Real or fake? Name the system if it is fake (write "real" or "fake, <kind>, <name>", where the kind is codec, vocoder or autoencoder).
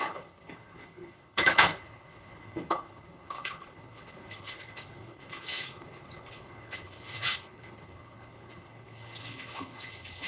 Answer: fake, codec, HILCodec